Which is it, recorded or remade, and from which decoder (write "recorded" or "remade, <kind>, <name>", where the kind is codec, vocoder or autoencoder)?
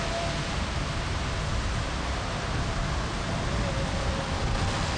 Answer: recorded